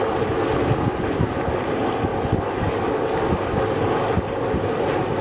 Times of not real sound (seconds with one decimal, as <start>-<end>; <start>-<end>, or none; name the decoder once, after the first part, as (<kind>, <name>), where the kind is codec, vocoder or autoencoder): none